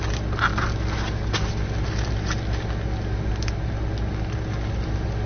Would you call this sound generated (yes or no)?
no